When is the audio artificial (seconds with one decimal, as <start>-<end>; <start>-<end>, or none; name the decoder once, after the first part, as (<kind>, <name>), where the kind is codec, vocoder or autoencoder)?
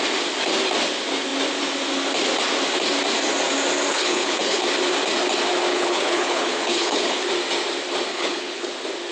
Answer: 3.9-4.6 (codec, HILCodec); 5.7-7.3; 8.1-8.7